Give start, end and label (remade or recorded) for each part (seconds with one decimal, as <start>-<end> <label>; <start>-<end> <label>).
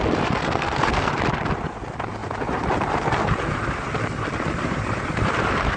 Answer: 0.0-0.4 recorded; 0.4-1.1 remade; 1.1-5.8 recorded